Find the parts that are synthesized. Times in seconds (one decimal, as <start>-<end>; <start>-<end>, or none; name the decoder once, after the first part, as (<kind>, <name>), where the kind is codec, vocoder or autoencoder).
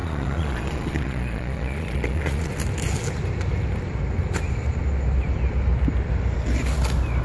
0.0-2.5 (vocoder, Vocos)